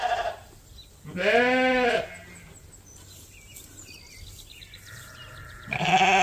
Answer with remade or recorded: recorded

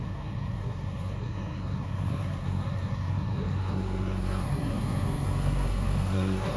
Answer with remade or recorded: remade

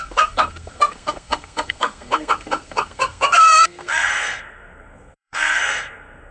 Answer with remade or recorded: remade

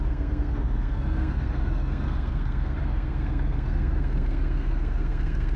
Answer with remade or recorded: remade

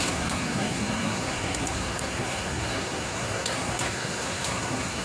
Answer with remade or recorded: remade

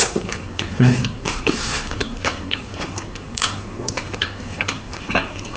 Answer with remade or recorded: remade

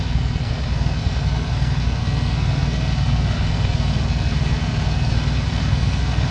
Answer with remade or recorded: remade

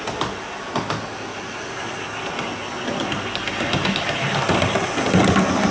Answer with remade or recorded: recorded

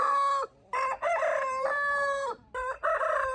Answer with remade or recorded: recorded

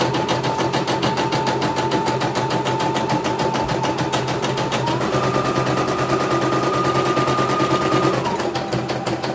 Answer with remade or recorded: recorded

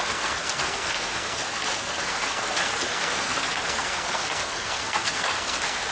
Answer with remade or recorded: remade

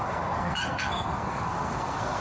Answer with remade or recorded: remade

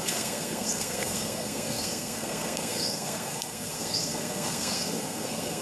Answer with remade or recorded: remade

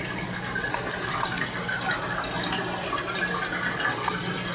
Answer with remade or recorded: recorded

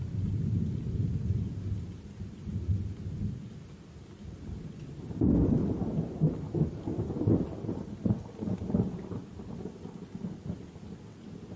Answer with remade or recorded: recorded